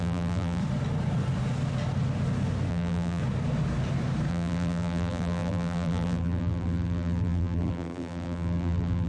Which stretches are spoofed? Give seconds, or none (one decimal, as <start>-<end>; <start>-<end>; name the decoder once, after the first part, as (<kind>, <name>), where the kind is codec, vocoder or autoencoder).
0.0-0.6 (vocoder, BigVGAN v2); 2.7-3.2; 4.3-9.1